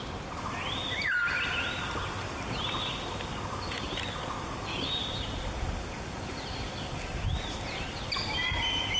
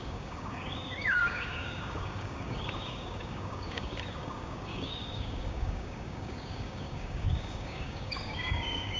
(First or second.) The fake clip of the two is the second